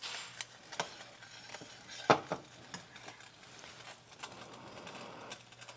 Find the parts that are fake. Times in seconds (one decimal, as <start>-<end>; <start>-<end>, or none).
none